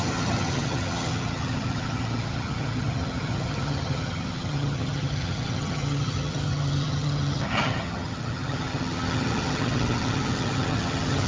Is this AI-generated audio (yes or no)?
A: yes